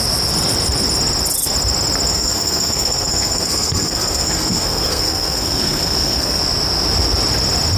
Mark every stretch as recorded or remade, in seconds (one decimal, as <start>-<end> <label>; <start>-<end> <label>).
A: 0.0-2.1 recorded; 2.1-6.4 remade; 6.4-7.8 recorded